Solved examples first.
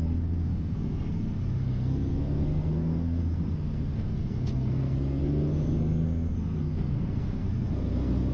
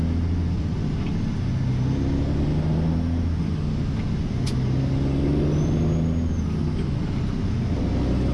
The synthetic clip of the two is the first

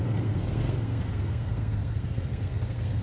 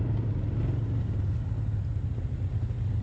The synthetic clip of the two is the first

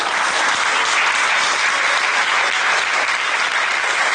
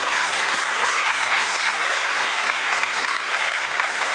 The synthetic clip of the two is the second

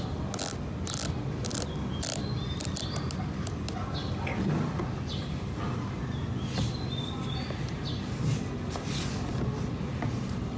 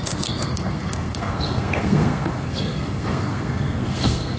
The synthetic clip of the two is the second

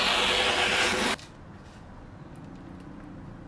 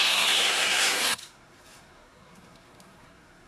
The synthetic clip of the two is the second